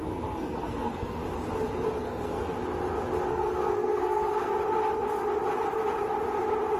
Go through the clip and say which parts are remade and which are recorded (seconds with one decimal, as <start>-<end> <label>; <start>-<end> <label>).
0.0-1.2 remade; 1.2-2.0 recorded; 2.0-2.5 remade; 2.5-3.3 recorded; 3.3-4.5 remade; 4.5-6.8 recorded